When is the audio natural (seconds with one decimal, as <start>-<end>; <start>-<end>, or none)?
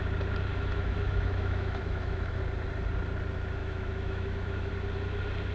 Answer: 0.0-0.5; 2.4-3.6; 4.7-5.5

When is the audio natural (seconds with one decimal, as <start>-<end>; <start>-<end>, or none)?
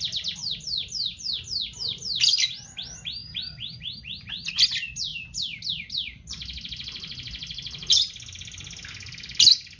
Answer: 0.0-9.8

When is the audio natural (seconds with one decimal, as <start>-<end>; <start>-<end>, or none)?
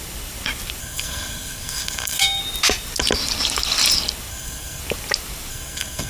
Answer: 0.0-0.8; 2.4-4.3; 4.8-5.5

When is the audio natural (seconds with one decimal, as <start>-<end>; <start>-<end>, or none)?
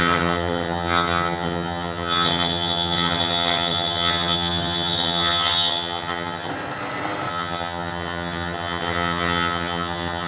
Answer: 6.5-7.3